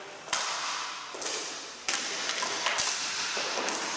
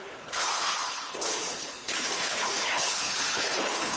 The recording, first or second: first